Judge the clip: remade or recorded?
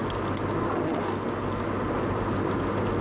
recorded